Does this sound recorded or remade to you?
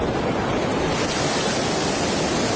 remade